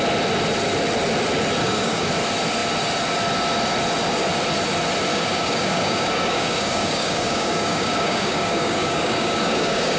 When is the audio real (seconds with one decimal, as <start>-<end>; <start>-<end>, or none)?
0.0-1.6; 2.1-5.1